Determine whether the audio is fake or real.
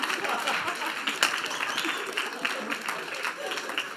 real